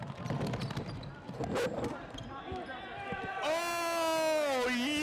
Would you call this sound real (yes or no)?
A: yes